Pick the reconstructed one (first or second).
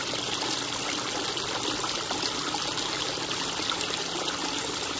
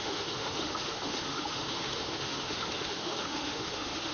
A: second